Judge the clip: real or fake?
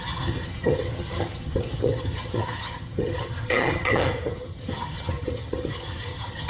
fake